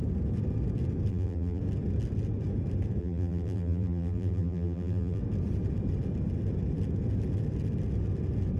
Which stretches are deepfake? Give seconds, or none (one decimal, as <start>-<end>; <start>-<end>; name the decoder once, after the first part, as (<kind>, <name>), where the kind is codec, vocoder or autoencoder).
1.1-1.6 (vocoder, BigVGAN v2); 3.0-5.2